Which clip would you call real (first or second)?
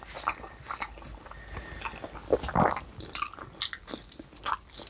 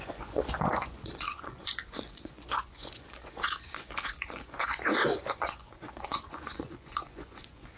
first